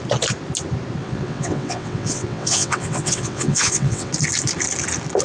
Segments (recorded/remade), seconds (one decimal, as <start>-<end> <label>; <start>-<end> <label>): 0.0-1.0 recorded; 1.0-4.1 remade; 4.1-5.2 recorded